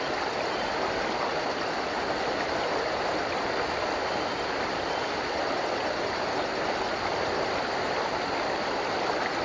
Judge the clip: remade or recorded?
recorded